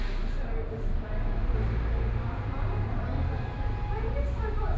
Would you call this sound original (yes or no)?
yes